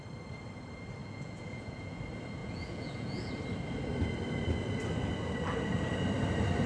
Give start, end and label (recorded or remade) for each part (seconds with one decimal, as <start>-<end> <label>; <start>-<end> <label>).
0.0-1.0 recorded; 1.0-2.0 remade; 2.0-2.4 recorded; 2.4-3.3 remade; 3.3-6.7 recorded

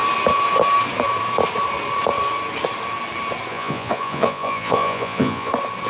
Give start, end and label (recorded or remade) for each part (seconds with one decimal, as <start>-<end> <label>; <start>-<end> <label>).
0.0-3.5 recorded; 3.5-5.5 remade; 5.5-5.9 recorded

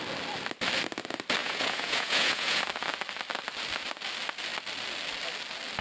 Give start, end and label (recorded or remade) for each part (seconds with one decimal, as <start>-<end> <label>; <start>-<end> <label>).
0.0-1.4 recorded; 1.4-2.6 remade; 2.6-5.8 recorded

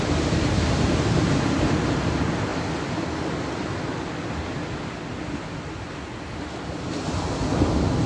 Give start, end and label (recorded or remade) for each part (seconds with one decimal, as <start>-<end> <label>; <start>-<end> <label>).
0.0-8.1 recorded

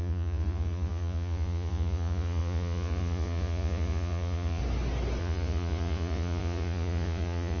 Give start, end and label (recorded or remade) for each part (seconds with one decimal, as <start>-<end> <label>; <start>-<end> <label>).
0.0-4.6 remade; 4.6-5.2 recorded; 5.2-7.6 remade

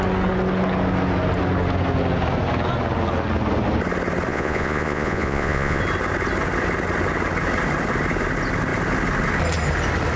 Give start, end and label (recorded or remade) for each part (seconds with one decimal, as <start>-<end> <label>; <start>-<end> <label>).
0.0-4.3 recorded; 4.3-5.8 remade; 5.8-10.2 recorded